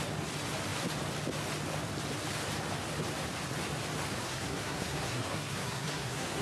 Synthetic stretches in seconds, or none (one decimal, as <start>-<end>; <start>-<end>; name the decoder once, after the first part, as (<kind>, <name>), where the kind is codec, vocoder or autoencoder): 4.2-6.4 (codec, SNAC)